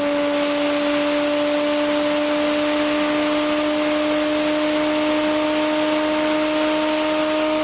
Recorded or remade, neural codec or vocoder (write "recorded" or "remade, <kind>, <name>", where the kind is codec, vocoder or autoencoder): recorded